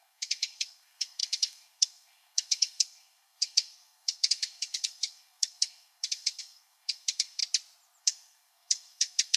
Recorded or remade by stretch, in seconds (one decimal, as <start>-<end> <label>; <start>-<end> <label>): 0.0-7.4 remade; 7.4-8.0 recorded; 8.0-9.4 remade